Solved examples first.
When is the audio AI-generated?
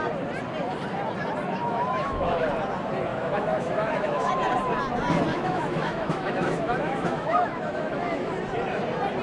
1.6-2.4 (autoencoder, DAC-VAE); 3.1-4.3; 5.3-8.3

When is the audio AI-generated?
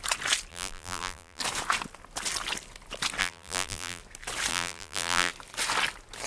0.5-1.4 (vocoder, BigVGAN v2); 3.2-4.0; 4.5-5.3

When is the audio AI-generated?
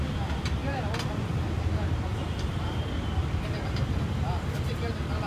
2.1-4.7 (vocoder, BigVGAN v2)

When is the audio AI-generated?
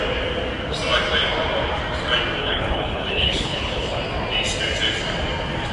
2.4-4.0 (codec, HILCodec)